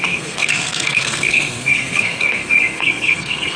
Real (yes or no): no